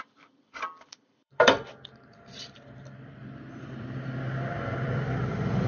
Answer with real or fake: fake